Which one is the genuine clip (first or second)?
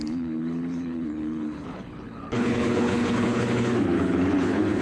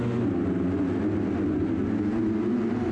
second